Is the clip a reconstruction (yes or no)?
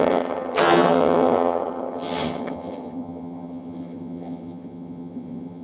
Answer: yes